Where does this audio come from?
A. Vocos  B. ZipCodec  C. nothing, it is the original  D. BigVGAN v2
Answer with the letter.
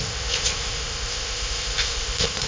B